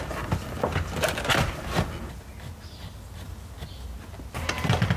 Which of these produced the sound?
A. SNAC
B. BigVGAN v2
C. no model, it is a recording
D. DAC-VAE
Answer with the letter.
C